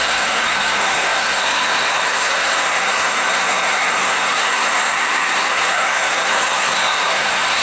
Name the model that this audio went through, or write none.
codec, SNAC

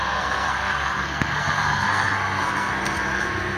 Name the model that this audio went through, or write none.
codec, SNAC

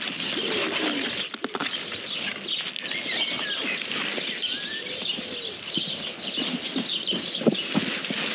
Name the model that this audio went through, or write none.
none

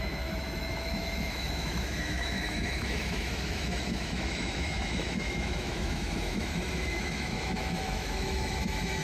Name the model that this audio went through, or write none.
autoencoder, DAC-VAE